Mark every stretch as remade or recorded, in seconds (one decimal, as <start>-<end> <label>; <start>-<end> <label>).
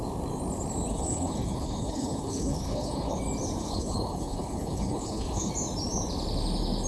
0.0-0.9 recorded; 0.9-3.2 remade; 3.2-3.6 recorded; 3.6-5.5 remade; 5.5-6.9 recorded